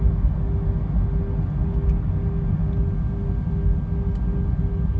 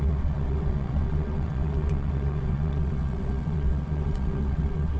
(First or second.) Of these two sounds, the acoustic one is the first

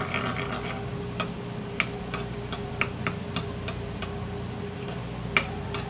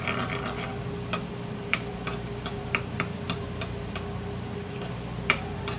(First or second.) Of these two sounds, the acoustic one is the first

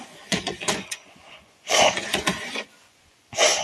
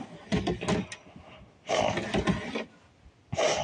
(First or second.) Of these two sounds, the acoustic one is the second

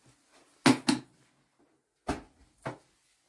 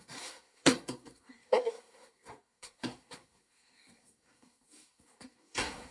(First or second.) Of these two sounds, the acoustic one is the first